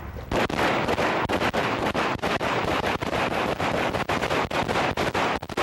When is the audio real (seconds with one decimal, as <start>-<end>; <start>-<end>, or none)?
0.0-1.6; 3.9-5.6